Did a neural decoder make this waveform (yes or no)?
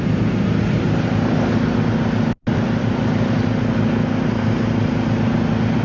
no